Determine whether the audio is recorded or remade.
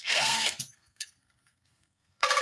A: remade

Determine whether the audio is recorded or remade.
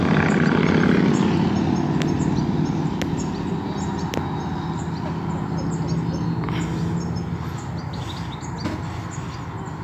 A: recorded